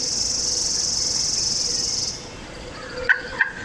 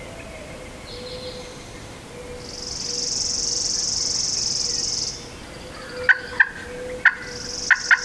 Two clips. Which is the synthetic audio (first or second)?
first